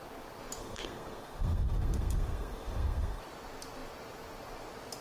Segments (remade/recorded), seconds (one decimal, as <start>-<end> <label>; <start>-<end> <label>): 0.0-0.6 recorded; 0.6-3.2 remade; 3.2-5.0 recorded